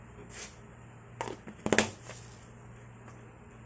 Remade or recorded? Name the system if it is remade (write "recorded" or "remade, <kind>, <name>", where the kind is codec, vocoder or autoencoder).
recorded